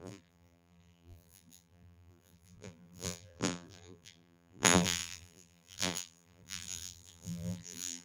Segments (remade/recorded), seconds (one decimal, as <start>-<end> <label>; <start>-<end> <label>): 0.0-8.0 remade